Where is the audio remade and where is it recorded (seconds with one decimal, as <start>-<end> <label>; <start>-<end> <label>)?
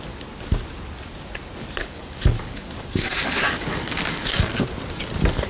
0.0-1.8 recorded; 1.8-4.5 remade; 4.5-5.5 recorded